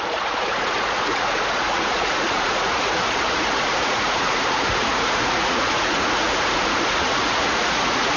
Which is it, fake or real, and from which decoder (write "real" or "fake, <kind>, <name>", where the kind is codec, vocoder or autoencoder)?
fake, vocoder, Vocos